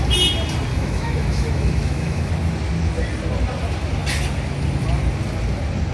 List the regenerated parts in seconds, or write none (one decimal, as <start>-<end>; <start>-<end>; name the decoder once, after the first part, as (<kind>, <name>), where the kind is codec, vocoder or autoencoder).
0.7-2.3 (autoencoder, DAC-VAE)